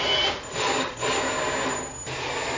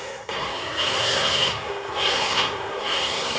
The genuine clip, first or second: first